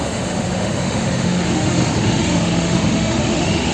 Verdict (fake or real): fake